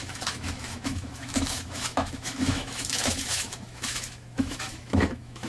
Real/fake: fake